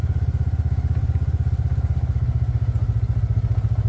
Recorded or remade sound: recorded